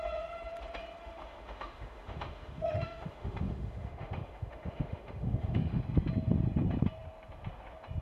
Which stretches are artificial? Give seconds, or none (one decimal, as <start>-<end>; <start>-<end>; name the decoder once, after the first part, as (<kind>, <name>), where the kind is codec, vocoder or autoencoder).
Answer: 1.0-5.8 (autoencoder, DAC-VAE)

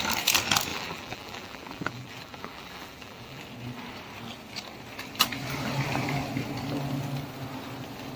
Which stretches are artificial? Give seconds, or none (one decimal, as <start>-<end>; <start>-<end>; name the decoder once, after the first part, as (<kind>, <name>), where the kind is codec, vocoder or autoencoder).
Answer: 0.7-3.4 (vocoder, BigVGAN v2)

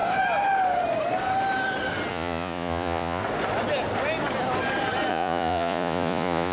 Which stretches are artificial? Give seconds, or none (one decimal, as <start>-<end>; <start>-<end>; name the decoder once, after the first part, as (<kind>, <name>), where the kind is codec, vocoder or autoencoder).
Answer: 2.1-3.2 (vocoder, Vocos); 5.1-6.5

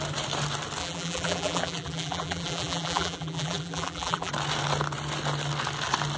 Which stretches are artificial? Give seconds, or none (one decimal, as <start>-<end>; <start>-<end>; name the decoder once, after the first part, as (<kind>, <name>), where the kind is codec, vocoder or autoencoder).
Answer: 0.8-4.3 (vocoder, BigVGAN v2)